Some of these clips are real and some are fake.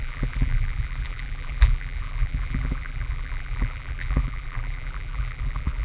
fake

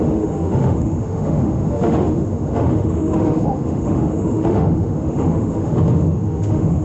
fake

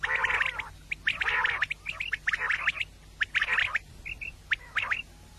real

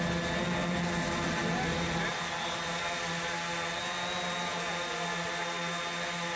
real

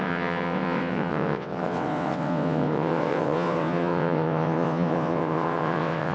fake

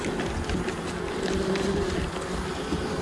real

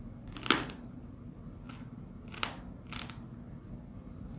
real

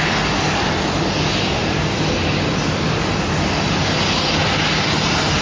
real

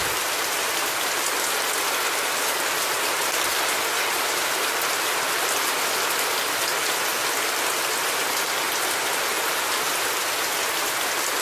real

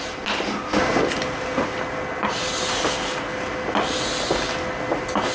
real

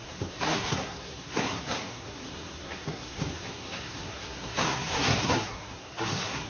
fake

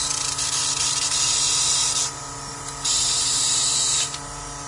real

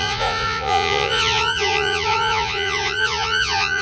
fake